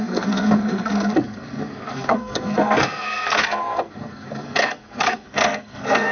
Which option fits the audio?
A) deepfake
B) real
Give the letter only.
A